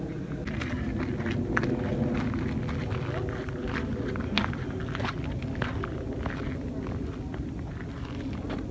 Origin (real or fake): real